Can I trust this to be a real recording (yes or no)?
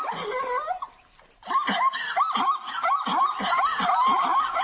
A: yes